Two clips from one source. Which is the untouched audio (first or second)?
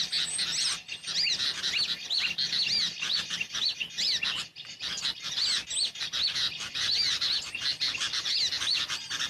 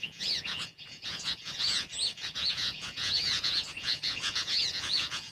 first